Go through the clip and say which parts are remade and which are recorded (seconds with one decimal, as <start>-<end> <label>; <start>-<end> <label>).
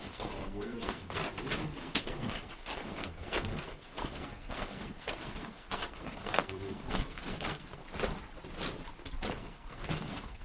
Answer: 0.0-1.2 remade; 1.2-1.8 recorded; 1.8-7.8 remade; 7.8-9.3 recorded; 9.3-10.4 remade